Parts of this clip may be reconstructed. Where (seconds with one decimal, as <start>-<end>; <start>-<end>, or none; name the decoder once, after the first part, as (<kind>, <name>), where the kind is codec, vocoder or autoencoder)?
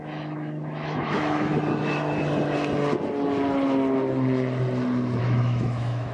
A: 0.0-1.5 (autoencoder, DAC-VAE); 5.2-6.1